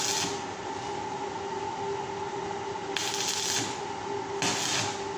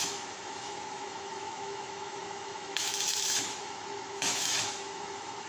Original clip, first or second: first